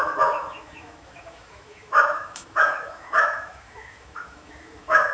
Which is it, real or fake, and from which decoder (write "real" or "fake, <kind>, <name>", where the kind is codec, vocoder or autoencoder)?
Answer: fake, autoencoder, DAC-VAE